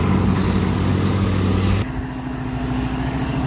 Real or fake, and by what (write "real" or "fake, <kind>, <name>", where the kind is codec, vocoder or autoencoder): fake, codec, DAC